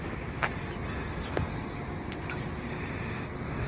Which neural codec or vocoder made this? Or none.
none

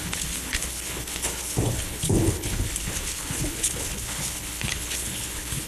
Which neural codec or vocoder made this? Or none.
codec, HILCodec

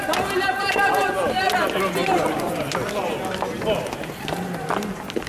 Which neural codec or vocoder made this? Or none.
none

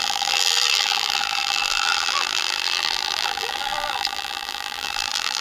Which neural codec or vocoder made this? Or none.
vocoder, BigVGAN v2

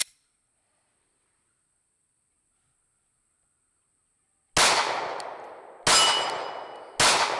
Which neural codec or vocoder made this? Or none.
none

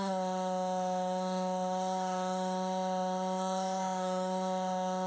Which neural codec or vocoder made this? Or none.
autoencoder, DAC-VAE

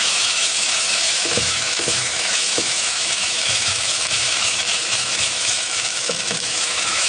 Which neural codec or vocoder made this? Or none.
autoencoder, DAC-VAE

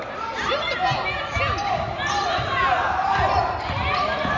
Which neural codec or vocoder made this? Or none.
none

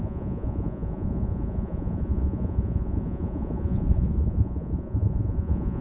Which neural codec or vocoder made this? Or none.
vocoder, Vocos